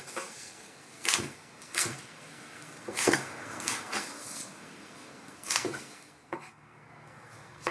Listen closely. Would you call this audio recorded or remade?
remade